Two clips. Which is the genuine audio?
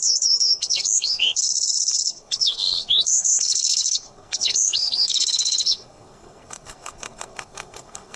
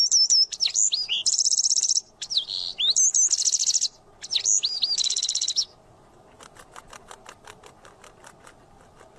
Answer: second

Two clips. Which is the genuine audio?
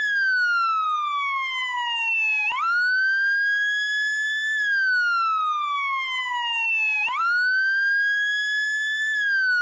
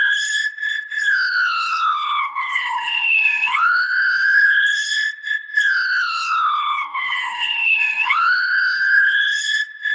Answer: first